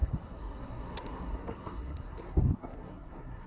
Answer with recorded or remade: remade